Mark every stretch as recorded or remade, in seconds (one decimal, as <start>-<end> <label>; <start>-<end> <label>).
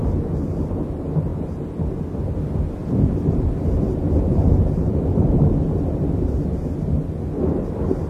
0.0-2.8 recorded; 2.8-5.8 remade; 5.8-8.1 recorded